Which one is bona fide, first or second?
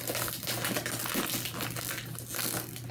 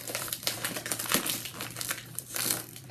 first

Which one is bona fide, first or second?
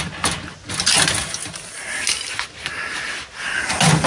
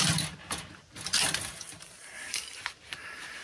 first